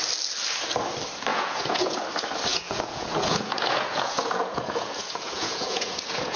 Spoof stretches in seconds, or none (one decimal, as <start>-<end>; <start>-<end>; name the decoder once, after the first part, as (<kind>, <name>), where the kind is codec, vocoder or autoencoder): 1.3-2.0 (vocoder, Vocos); 2.5-6.4